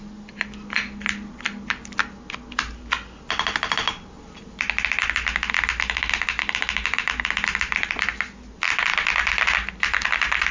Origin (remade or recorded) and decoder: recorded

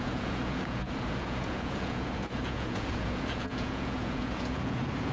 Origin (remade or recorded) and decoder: remade, vocoder, Vocos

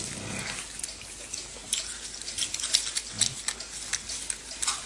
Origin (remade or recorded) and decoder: recorded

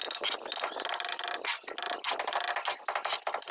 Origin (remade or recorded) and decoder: recorded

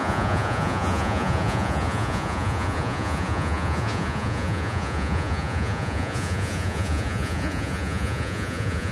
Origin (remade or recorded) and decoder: remade, vocoder, Vocos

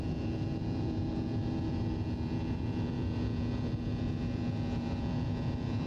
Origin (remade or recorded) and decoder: remade, vocoder, Vocos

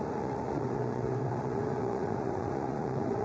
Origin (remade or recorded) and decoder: remade, vocoder, Vocos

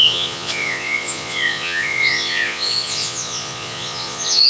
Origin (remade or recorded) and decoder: remade, vocoder, Vocos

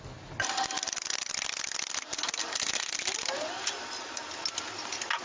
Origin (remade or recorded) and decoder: recorded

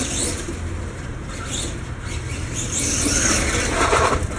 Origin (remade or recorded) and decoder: recorded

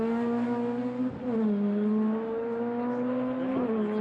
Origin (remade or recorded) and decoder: recorded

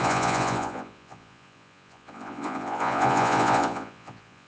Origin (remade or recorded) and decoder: remade, vocoder, Vocos